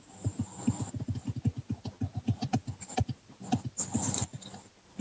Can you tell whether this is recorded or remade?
recorded